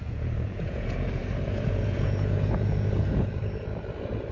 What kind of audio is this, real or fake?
fake